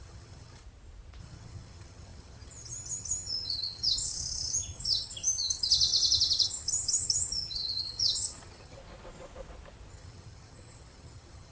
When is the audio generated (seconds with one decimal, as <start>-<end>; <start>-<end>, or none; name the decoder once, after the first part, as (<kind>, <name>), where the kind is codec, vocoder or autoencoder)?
0.0-0.6 (vocoder, HiFi-GAN); 1.2-8.8; 9.9-11.5